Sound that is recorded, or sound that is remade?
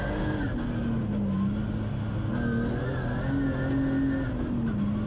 recorded